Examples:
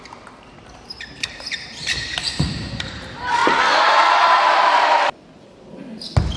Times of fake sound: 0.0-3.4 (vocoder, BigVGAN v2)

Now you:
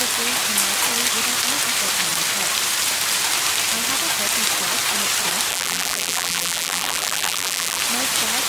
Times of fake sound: 5.5-7.8 (vocoder, BigVGAN v2)

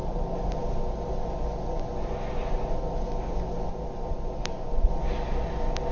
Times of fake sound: 0.0-0.8 (vocoder, BigVGAN v2); 3.7-4.9

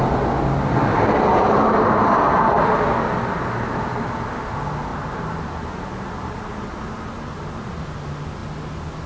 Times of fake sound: 1.3-2.5 (vocoder, BigVGAN v2); 4.9-7.8

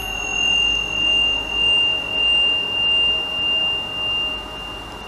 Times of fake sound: none

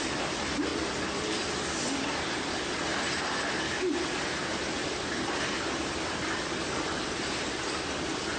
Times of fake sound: 0.0-0.7 (vocoder, BigVGAN v2); 2.3-2.9; 4.5-8.4

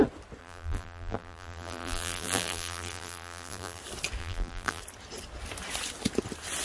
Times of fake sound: 0.4-3.8 (vocoder, BigVGAN v2); 4.2-4.8

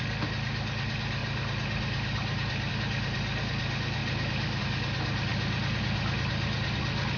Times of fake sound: 4.0-4.6 (vocoder, BigVGAN v2)